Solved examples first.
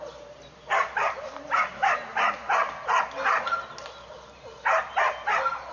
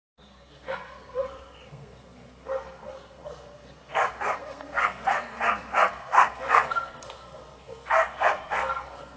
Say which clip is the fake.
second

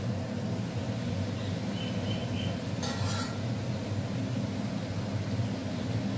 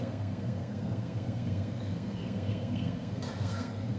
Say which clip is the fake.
second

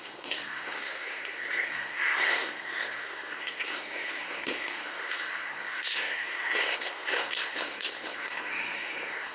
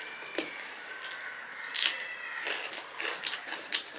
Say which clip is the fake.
first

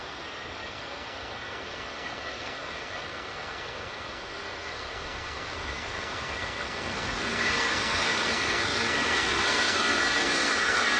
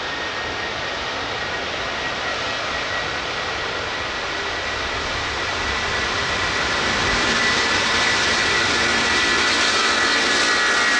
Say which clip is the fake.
first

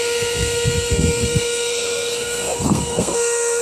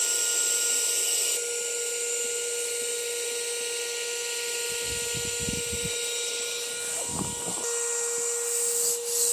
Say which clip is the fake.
first